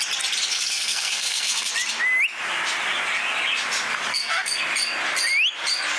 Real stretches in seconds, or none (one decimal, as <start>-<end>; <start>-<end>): 0.0-0.5; 1.7-4.1; 4.6-6.0